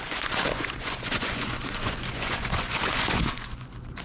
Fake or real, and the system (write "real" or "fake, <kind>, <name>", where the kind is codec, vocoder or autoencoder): fake, vocoder, Vocos